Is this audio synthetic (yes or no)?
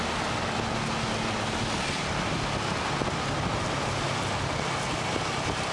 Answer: no